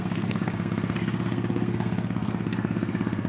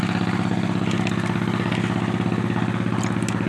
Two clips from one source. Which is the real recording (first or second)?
second